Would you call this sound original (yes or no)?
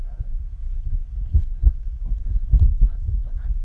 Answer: no